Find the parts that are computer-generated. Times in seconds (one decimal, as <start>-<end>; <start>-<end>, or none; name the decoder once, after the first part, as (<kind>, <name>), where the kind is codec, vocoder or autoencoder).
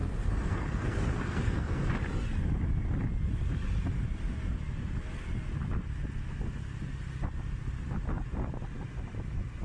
0.0-1.9 (codec, SNAC)